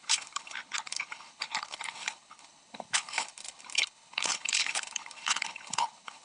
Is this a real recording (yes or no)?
no